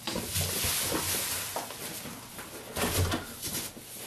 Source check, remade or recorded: recorded